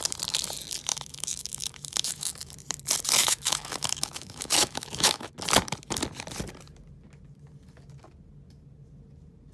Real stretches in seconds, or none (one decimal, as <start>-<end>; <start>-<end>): 0.0-0.9; 2.5-3.2; 5.3-9.5